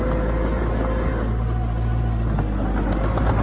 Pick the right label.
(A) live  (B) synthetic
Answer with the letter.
A